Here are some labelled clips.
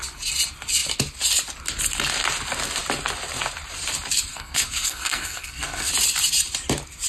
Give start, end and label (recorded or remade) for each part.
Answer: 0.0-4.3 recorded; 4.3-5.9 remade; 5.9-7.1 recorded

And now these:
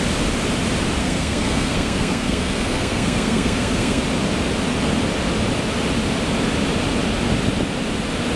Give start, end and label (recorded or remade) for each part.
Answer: 0.0-1.0 recorded; 1.0-4.0 remade; 4.0-8.4 recorded

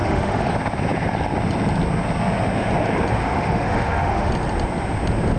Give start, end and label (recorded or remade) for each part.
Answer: 0.0-0.5 remade; 0.5-3.2 recorded; 3.2-4.3 remade; 4.3-5.4 recorded

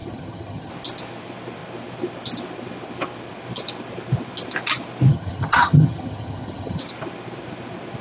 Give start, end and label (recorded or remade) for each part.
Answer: 0.0-0.7 remade; 0.7-5.1 recorded; 5.1-6.8 remade; 6.8-8.0 recorded

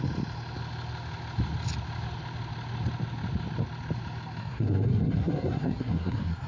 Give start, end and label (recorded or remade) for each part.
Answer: 0.0-4.4 recorded; 4.4-6.5 remade

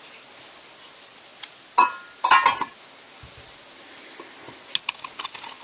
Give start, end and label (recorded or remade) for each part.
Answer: 0.0-5.6 recorded

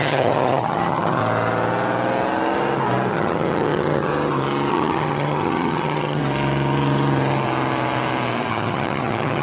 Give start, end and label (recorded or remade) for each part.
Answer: 0.0-1.2 remade; 1.2-3.1 recorded; 3.1-4.1 remade; 4.1-4.7 recorded; 4.7-6.2 remade; 6.2-8.5 recorded; 8.5-9.4 remade

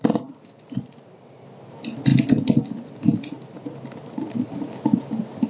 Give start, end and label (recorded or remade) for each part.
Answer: 0.0-5.5 recorded